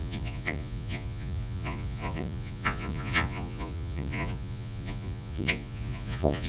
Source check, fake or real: fake